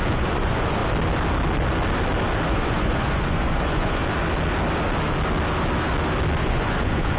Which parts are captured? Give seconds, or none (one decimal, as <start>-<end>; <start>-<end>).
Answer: 0.8-2.5; 4.0-6.4